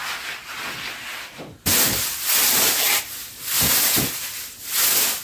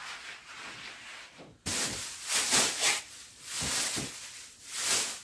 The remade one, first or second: second